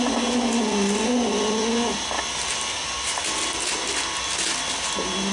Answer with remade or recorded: recorded